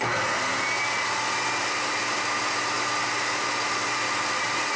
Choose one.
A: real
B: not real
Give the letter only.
A